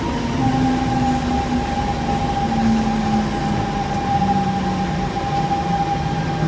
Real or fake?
real